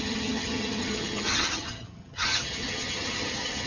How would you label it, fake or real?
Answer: fake